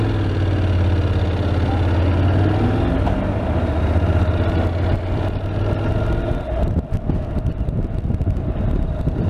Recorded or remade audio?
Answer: recorded